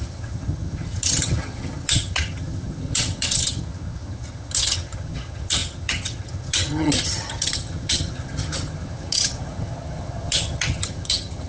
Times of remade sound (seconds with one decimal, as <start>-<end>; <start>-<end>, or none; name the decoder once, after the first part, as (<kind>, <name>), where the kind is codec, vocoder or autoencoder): 0.0-11.5 (vocoder, HiFi-GAN)